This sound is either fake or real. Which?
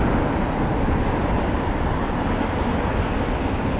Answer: real